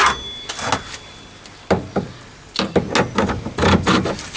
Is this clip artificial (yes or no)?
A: no